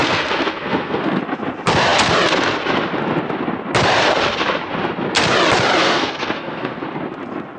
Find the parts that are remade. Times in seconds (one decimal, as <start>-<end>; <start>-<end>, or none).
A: 0.0-1.2; 5.8-6.8